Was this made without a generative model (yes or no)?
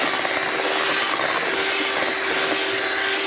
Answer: yes